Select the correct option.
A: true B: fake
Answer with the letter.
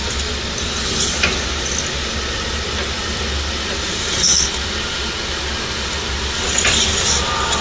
A